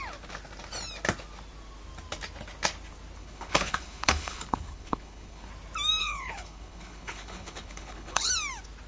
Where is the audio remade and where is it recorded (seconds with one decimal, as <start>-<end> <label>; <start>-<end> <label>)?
0.0-3.2 recorded; 3.2-5.5 remade; 5.5-6.0 recorded; 6.0-8.3 remade; 8.3-8.9 recorded

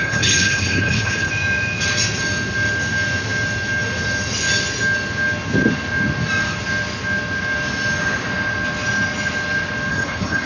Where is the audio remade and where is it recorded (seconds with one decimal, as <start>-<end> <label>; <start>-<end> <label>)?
0.0-1.3 remade; 1.3-9.9 recorded; 9.9-10.5 remade

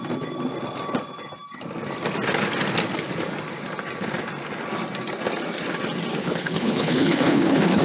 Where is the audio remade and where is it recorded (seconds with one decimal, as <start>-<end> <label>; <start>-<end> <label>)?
0.0-6.2 recorded; 6.2-7.8 remade